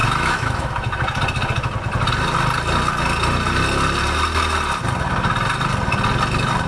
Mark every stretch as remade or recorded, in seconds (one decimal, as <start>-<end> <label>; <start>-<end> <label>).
0.0-1.0 remade; 1.0-6.7 recorded